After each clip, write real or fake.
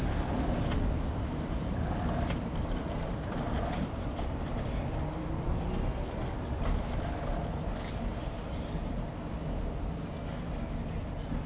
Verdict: real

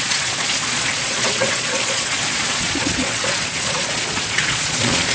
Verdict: fake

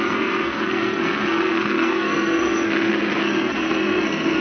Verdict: fake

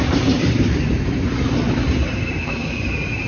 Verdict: fake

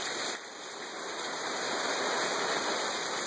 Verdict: real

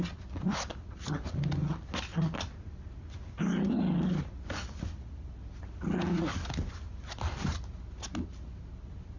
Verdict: real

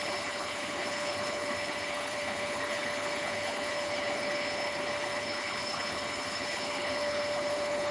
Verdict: fake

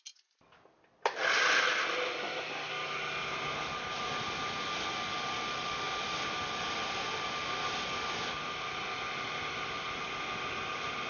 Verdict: real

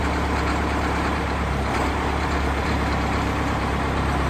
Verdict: fake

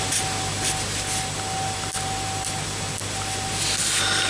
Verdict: real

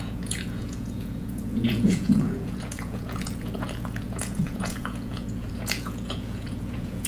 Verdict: fake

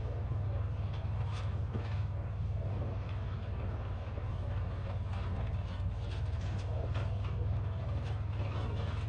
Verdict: fake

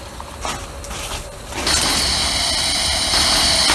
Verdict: real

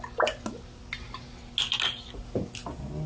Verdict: real